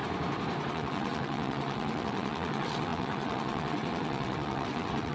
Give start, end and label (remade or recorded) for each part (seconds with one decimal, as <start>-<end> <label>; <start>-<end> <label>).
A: 0.0-0.7 recorded; 0.7-5.1 remade